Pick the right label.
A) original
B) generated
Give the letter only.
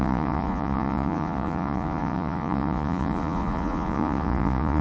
B